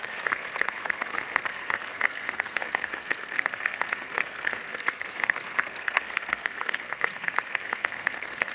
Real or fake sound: fake